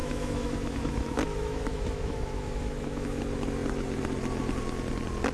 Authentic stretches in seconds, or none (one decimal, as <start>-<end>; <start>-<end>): 3.2-5.3